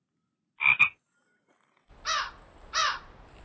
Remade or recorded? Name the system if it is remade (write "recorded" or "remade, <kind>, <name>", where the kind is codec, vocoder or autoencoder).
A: recorded